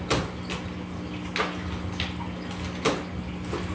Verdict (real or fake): real